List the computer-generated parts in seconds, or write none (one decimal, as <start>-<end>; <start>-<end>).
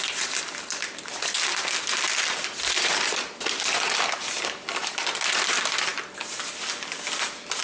none